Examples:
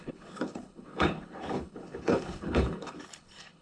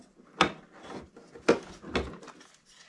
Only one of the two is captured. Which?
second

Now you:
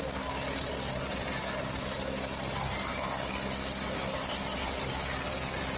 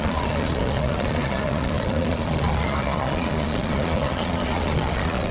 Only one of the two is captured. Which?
first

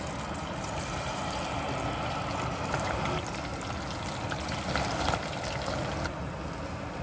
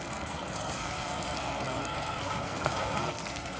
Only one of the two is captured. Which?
first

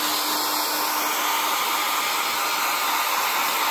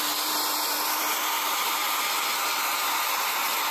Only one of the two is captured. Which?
first